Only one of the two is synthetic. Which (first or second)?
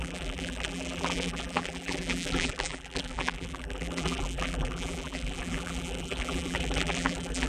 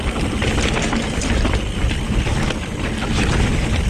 first